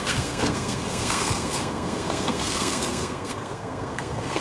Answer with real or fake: fake